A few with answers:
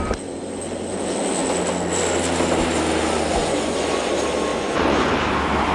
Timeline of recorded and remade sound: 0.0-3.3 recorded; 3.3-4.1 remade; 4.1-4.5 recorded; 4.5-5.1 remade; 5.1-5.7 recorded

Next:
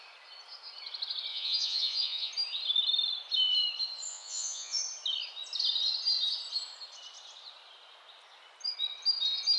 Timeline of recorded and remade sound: 0.0-1.3 recorded; 1.3-2.3 remade; 2.3-4.1 recorded; 4.1-4.8 remade; 4.8-9.6 recorded

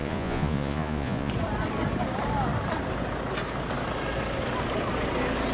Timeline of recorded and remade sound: 0.0-1.3 remade; 1.3-5.5 recorded